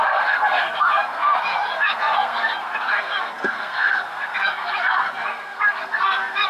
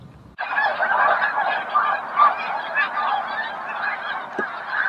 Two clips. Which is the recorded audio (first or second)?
second